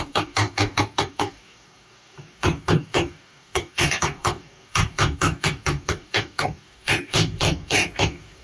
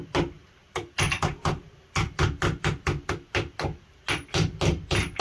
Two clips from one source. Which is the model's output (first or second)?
first